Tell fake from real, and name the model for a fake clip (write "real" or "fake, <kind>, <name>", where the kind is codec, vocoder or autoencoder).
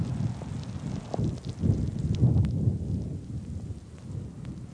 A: real